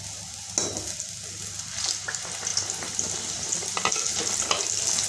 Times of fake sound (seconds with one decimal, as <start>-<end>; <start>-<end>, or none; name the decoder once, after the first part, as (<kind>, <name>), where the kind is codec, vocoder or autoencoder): none